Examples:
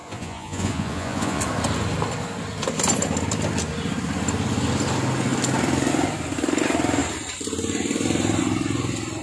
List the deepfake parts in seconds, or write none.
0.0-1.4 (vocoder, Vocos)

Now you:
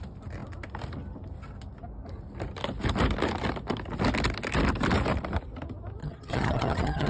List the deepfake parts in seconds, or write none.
6.0-7.1 (vocoder, HiFi-GAN)